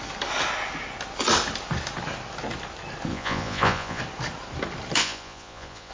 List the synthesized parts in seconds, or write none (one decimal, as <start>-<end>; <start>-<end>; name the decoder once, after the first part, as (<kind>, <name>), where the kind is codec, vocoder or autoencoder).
3.1-4.0 (vocoder, Vocos); 5.0-5.9